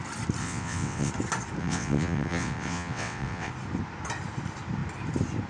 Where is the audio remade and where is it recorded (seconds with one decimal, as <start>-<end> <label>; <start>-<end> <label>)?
0.0-0.4 recorded; 0.4-1.1 remade; 1.1-1.6 recorded; 1.6-3.5 remade; 3.5-5.5 recorded